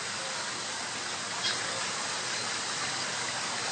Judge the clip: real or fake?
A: real